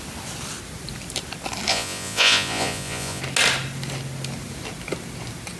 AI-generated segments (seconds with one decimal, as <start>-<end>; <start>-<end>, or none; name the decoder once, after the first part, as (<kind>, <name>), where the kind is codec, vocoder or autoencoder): 1.7-3.2 (vocoder, Vocos)